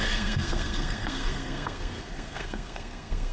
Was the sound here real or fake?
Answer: fake